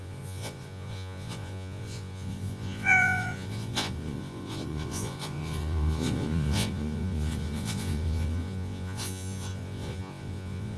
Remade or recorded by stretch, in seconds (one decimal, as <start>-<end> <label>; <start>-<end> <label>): 0.0-10.8 remade